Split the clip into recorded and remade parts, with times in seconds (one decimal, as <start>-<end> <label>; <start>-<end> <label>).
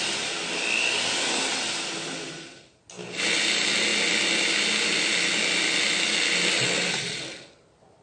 0.0-8.0 recorded